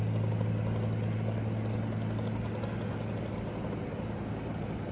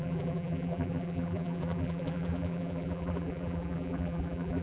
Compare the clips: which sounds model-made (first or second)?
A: second